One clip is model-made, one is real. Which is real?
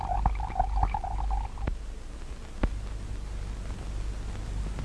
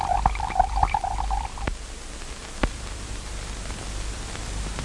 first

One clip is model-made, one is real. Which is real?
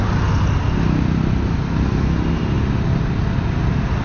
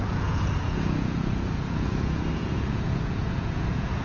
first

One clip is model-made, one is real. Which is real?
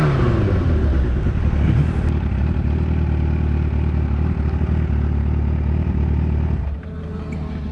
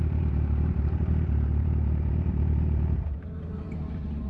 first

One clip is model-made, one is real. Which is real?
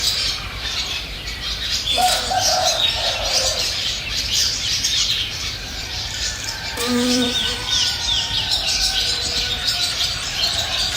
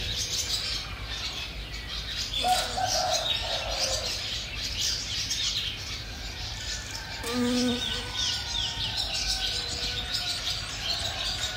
second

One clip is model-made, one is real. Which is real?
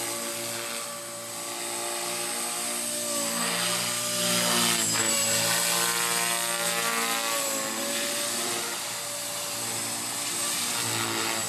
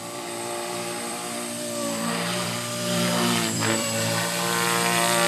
first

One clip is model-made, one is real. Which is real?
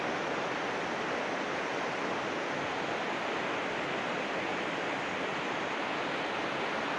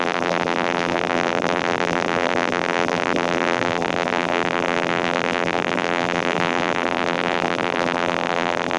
first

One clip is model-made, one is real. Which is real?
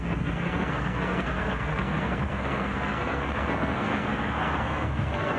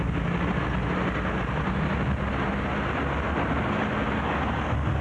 second